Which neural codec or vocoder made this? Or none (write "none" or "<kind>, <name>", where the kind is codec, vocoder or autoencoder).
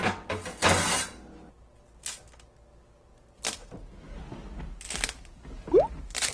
none